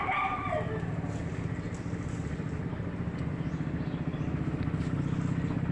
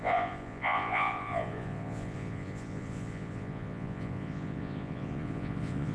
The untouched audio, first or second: first